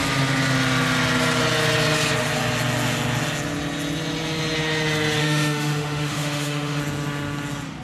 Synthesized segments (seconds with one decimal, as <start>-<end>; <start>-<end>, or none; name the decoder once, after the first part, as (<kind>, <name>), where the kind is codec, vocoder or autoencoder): 5.2-6.8 (autoencoder, DAC-VAE)